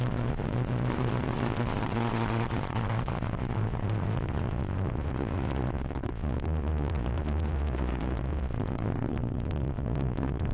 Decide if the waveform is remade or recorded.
remade